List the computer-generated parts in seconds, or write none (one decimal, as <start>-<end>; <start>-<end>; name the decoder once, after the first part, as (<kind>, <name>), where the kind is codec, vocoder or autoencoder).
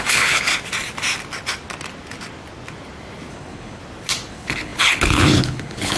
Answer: 0.0-0.5 (codec, HILCodec); 3.3-3.8; 4.3-6.0